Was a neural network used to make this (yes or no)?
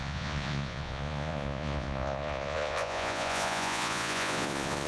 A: yes